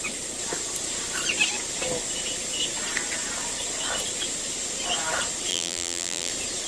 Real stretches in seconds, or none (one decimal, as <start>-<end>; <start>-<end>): 0.0-5.5; 6.3-6.7